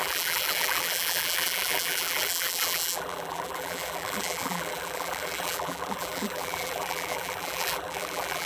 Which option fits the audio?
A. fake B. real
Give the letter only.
A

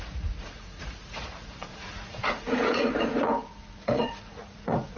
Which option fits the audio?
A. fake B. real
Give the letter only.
A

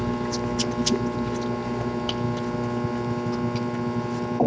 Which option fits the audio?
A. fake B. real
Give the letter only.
B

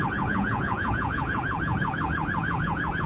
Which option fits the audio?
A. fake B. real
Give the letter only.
A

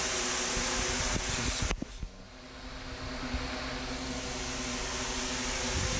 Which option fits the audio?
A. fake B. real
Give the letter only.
B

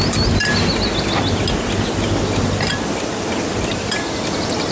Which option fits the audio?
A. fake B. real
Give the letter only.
B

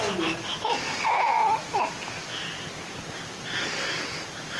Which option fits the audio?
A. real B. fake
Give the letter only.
A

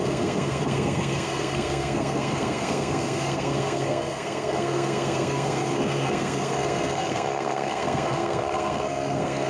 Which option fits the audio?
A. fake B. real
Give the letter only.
A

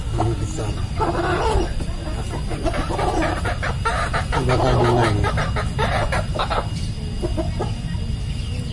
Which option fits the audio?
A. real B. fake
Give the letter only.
A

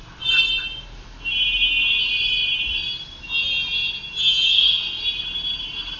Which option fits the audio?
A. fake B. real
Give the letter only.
B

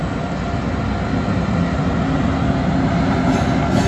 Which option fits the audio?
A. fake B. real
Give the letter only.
B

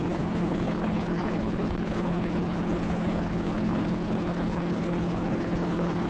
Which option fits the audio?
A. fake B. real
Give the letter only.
A